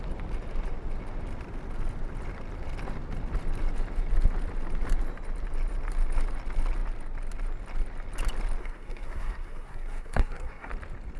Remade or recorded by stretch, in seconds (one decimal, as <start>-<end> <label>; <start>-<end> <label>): 0.0-8.6 recorded; 8.6-10.7 remade; 10.7-11.2 recorded